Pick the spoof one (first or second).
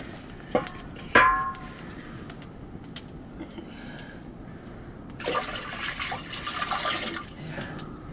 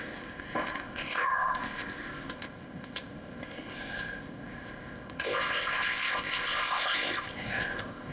second